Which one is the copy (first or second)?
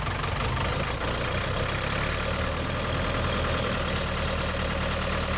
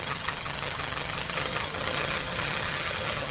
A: second